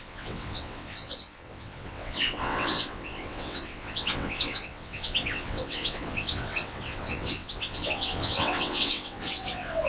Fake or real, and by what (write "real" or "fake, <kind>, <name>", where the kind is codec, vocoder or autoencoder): fake, vocoder, WaveNeXt